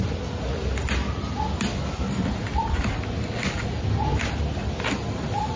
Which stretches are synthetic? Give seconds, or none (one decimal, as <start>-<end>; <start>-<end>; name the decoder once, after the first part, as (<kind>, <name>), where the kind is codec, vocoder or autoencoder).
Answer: none

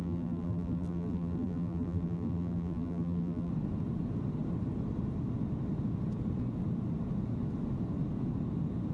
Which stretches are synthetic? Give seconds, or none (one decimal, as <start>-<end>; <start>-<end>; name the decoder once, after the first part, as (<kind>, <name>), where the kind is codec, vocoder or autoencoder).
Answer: 0.0-3.5 (vocoder, BigVGAN v2)

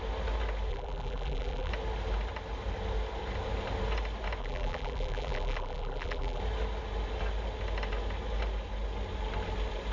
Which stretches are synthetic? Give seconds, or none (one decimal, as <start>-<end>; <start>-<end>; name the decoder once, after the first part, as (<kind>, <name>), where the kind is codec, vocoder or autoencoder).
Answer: 0.7-1.7 (vocoder, BigVGAN v2); 4.4-6.4

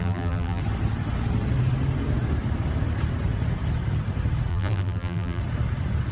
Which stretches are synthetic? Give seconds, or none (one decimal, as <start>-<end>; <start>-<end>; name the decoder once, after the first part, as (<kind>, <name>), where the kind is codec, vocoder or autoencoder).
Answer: 0.0-0.6 (vocoder, BigVGAN v2); 4.5-5.4

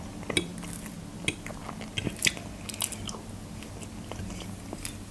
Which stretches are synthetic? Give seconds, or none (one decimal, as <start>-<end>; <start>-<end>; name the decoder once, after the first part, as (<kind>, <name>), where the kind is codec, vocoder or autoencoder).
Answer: none

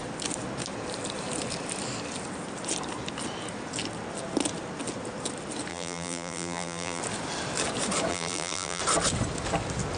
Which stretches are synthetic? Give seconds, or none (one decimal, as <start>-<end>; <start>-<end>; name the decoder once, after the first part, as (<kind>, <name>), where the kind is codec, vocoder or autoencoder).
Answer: 5.7-7.0 (vocoder, BigVGAN v2); 8.1-8.8

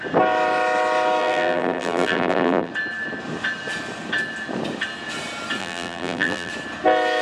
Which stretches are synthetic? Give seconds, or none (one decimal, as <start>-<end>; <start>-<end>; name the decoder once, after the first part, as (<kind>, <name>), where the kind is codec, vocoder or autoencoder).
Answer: 1.2-2.7 (vocoder, BigVGAN v2); 5.6-6.5

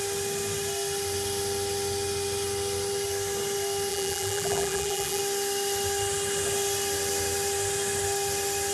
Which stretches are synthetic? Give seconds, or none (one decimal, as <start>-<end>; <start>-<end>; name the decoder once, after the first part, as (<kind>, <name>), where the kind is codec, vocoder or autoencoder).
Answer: 3.9-5.2 (vocoder, BigVGAN v2)